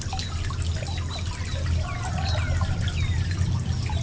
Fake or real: real